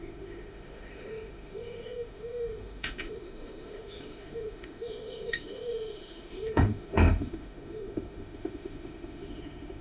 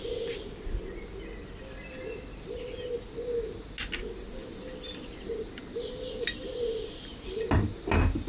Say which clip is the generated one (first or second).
first